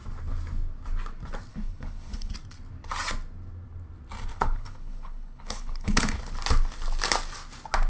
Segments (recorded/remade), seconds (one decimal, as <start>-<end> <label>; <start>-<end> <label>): 0.0-1.5 recorded; 1.5-2.3 remade; 2.3-4.3 recorded; 4.3-6.2 remade; 6.2-7.9 recorded